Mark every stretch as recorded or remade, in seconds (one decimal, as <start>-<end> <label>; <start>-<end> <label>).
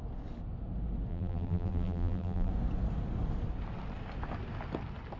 0.0-1.1 recorded; 1.1-2.5 remade; 2.5-5.2 recorded